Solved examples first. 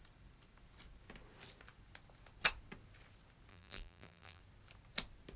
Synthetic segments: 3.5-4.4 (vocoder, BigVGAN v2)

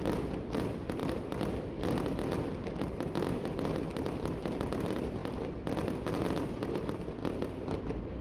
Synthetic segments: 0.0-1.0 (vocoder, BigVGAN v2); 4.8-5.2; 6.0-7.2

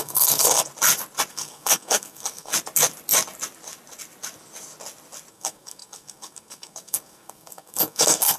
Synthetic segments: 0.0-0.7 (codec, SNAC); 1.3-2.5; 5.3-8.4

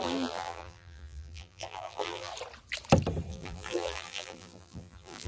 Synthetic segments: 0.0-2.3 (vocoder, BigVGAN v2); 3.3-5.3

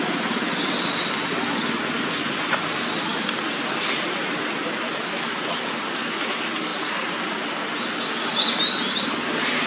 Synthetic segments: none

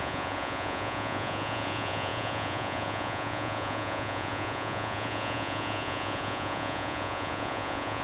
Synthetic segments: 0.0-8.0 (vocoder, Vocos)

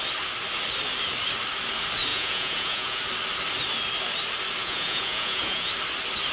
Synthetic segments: 2.1-3.0 (vocoder, Vocos); 4.6-5.7